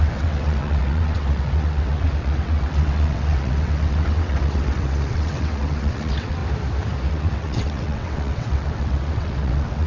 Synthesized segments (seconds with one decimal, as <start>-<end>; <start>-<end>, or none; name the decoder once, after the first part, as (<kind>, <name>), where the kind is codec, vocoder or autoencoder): 0.0-6.4 (vocoder, WaveNeXt); 7.1-9.9

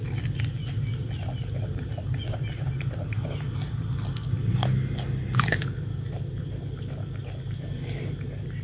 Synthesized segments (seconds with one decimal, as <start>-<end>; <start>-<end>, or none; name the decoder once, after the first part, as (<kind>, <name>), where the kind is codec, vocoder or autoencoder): none